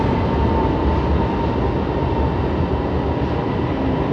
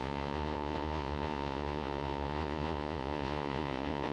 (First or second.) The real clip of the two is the first